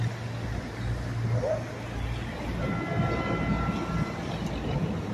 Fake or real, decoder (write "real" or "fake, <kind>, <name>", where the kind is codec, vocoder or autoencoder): real